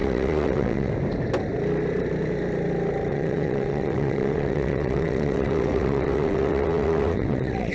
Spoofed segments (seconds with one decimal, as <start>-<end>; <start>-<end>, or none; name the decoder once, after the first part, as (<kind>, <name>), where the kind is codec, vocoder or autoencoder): 0.0-0.9 (vocoder, WaveNeXt); 3.1-7.7